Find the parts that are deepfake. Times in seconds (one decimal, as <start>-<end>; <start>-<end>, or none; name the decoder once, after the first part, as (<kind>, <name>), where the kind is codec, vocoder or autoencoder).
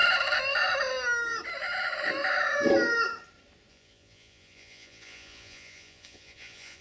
3.7-6.8 (vocoder, Vocos)